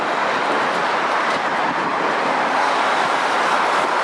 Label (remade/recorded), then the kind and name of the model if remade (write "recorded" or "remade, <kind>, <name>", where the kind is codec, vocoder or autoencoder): recorded